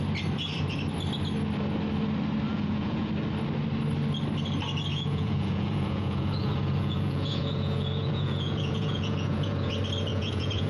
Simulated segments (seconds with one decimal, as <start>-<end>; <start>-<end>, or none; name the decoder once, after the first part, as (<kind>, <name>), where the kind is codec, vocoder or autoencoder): 2.5-3.1 (vocoder, Vocos); 4.9-9.7; 10.1-10.7